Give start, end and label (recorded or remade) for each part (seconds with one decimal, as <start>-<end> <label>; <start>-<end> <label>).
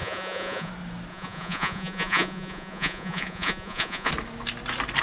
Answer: 0.0-0.7 remade; 0.7-1.1 recorded; 1.1-4.1 remade; 4.1-5.0 recorded